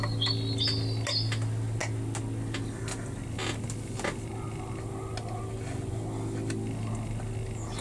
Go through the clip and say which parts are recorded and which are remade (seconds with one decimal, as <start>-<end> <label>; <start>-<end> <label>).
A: 0.0-7.8 recorded